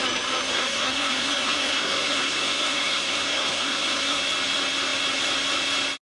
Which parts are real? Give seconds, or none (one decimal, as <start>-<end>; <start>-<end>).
0.0-0.5; 4.2-6.1